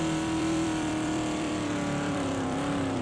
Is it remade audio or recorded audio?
remade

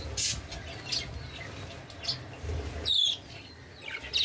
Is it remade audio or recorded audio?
recorded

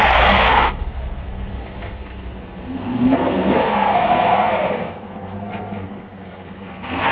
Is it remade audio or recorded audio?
remade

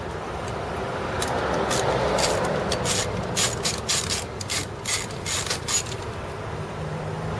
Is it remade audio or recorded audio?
recorded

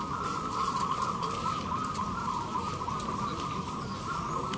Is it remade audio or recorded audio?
recorded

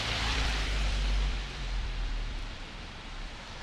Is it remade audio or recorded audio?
remade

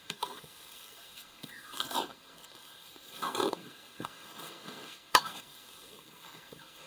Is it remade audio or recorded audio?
remade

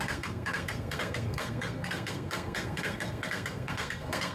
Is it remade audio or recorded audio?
remade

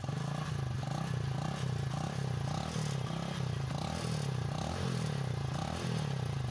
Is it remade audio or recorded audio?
recorded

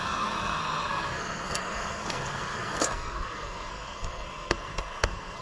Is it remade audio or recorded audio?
remade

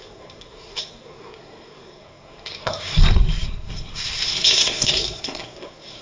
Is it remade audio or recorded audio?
remade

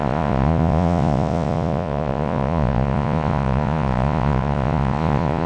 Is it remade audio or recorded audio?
remade